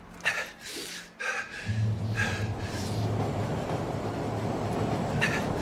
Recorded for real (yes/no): yes